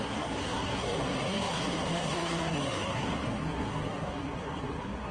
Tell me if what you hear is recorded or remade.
remade